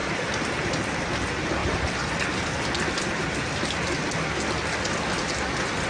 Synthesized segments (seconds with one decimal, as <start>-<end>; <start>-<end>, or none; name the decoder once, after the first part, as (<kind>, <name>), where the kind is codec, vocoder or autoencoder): none